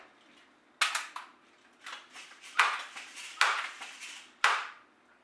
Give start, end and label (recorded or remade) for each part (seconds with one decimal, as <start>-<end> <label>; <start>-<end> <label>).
0.0-5.2 recorded